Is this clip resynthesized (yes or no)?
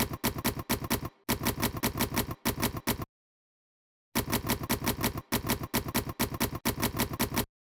no